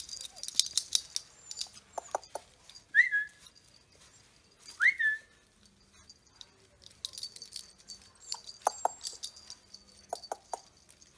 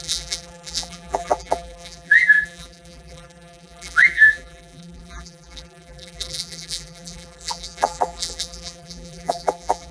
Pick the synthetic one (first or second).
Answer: second